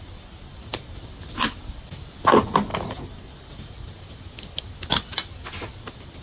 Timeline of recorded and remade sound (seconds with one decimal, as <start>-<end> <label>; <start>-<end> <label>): 0.0-6.2 recorded